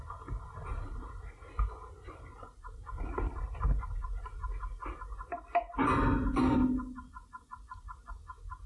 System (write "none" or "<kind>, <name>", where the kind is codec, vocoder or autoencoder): none